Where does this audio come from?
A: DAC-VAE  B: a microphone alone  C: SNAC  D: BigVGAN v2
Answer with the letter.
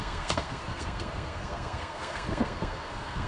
C